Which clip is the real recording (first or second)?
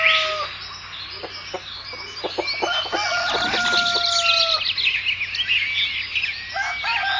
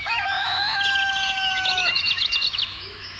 first